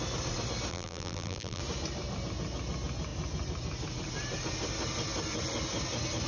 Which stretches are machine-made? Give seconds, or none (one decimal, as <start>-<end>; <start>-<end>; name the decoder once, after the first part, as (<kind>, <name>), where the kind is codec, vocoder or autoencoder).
0.7-1.6 (vocoder, BigVGAN v2)